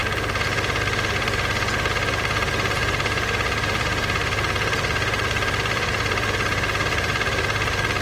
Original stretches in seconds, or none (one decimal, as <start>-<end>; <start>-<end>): 0.0-2.1